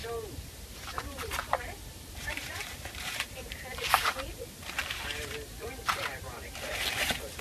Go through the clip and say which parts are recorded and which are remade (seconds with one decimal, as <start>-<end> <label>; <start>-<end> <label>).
0.0-4.4 remade; 4.4-7.4 recorded

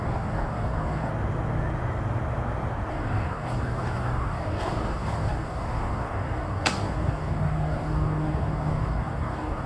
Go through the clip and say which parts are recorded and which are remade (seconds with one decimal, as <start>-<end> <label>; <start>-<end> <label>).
0.0-1.1 remade; 1.1-2.9 recorded; 2.9-9.7 remade

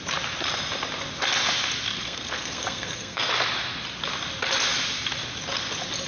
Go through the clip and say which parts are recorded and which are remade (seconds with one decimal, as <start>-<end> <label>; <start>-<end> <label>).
0.0-1.9 recorded; 1.9-3.3 remade; 3.3-6.1 recorded